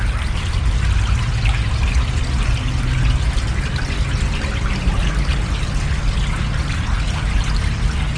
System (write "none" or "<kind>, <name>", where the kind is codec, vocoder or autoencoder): none